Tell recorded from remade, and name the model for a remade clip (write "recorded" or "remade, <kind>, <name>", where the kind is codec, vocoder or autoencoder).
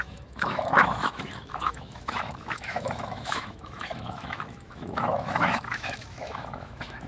remade, autoencoder, DAC-VAE